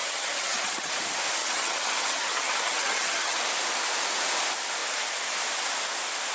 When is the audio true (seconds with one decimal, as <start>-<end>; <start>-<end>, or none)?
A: 0.9-1.4; 3.4-6.3